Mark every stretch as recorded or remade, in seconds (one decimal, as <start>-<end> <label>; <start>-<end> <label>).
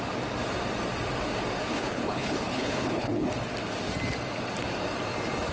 0.0-1.7 recorded; 1.7-3.3 remade; 3.3-5.5 recorded